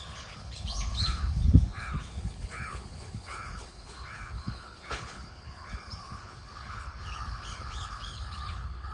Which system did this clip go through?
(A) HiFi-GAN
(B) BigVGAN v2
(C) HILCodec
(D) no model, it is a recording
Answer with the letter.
C